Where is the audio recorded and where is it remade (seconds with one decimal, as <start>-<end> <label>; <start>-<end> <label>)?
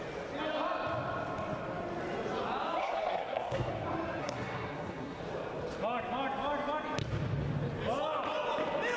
0.0-2.8 recorded; 2.8-3.7 remade; 3.7-4.2 recorded; 4.2-5.2 remade; 5.2-9.0 recorded